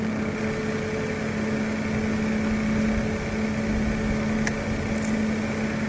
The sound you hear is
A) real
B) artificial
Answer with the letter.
A